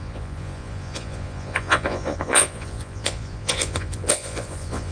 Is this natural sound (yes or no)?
no